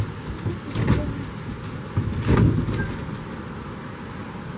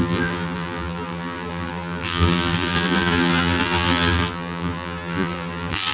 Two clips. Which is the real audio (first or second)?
first